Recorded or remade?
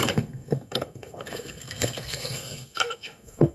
remade